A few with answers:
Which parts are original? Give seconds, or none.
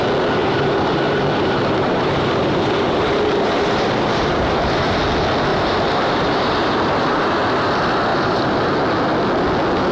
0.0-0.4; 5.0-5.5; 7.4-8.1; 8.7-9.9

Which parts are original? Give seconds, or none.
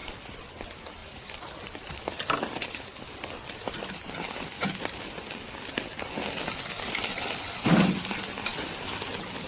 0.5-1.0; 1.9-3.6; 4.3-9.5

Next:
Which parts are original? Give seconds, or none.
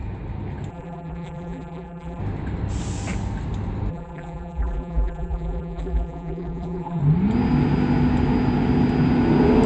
0.0-0.7; 2.2-3.9; 7.0-9.7